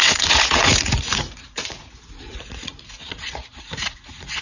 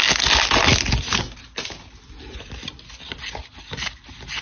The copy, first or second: first